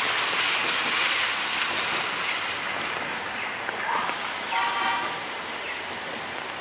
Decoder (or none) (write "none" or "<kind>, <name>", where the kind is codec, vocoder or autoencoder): none